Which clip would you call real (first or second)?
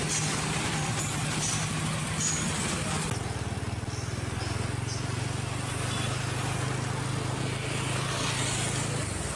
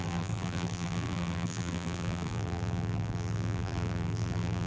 first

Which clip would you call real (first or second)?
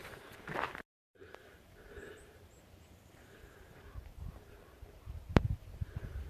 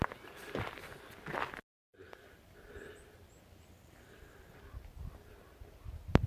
second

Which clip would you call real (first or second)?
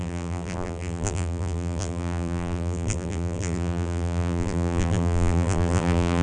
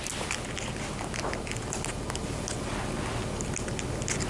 second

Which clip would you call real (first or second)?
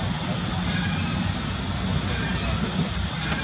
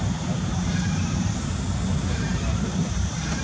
first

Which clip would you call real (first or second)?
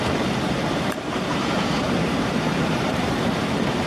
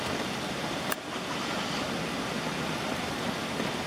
second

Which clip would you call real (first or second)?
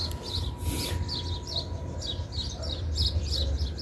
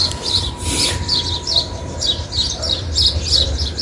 first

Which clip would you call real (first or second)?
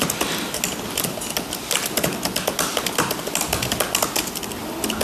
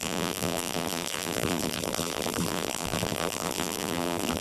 first